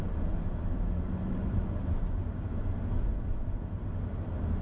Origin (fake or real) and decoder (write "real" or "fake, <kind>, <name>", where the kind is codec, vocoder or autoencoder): real